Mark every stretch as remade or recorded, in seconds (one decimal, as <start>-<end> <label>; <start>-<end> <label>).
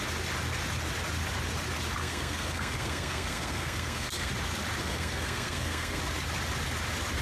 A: 0.0-2.0 recorded; 2.0-4.3 remade; 4.3-4.8 recorded; 4.8-6.0 remade; 6.0-7.2 recorded